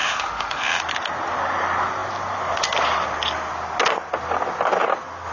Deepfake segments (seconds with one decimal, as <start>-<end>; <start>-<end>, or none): 0.0-0.8